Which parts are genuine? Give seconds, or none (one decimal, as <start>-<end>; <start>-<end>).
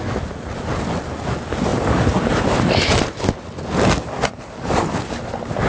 0.0-5.7